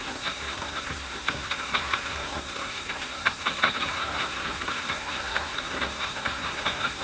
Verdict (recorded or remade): remade